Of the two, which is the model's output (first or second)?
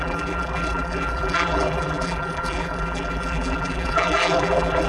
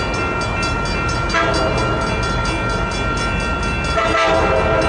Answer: first